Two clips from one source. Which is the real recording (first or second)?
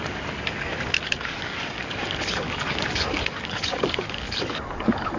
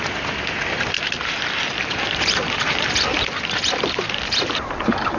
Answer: second